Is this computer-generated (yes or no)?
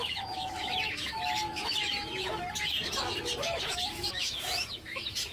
yes